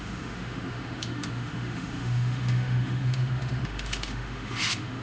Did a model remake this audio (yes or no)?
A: yes